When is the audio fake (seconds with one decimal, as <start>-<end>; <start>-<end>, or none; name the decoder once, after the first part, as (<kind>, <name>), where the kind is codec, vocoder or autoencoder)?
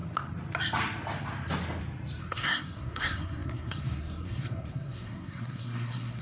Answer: 2.2-6.2 (codec, SNAC)